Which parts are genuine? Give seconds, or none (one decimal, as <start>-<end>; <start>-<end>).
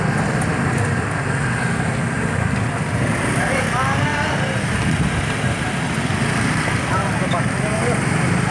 0.0-8.5